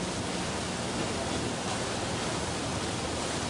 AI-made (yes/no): no